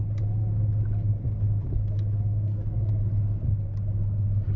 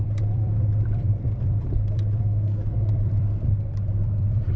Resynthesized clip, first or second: second